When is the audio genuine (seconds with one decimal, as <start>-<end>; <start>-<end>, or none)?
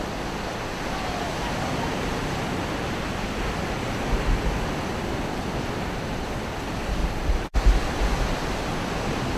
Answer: 0.0-7.0; 8.0-9.4